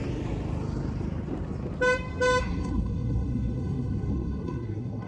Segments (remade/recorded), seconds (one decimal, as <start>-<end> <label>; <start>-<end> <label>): 0.0-2.4 recorded; 2.4-5.1 remade